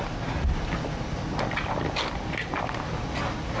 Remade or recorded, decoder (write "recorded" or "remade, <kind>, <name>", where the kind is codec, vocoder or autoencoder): recorded